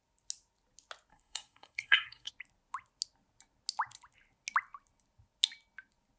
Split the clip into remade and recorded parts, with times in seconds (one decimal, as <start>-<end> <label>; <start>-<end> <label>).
0.0-1.1 recorded; 1.1-2.3 remade; 2.3-6.2 recorded